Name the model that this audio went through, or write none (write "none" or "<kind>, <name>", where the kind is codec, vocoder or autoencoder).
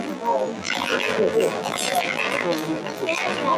vocoder, BigVGAN v2